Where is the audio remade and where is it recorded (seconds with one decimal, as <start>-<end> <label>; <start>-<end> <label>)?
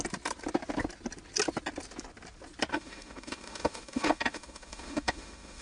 0.0-2.7 recorded; 2.7-5.6 remade